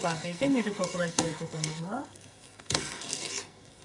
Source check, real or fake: fake